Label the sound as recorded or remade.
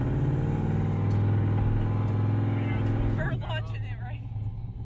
recorded